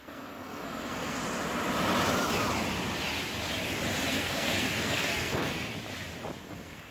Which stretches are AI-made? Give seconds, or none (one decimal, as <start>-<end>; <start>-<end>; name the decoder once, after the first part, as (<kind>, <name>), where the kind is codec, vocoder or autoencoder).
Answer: 0.0-1.2 (codec, SNAC); 4.1-5.7; 6.4-6.9